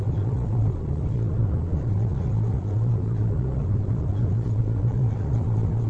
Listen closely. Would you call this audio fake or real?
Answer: fake